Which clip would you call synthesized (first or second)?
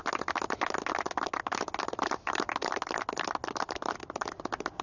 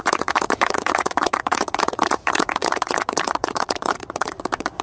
second